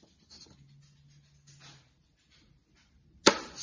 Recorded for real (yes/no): yes